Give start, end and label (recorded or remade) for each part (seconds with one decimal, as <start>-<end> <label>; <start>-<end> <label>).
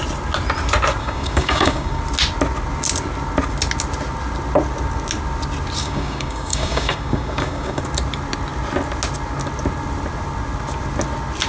0.0-1.0 recorded; 1.0-2.0 remade; 2.0-5.8 recorded; 5.8-7.8 remade; 7.8-11.5 recorded